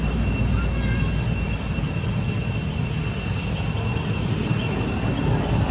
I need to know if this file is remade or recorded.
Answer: recorded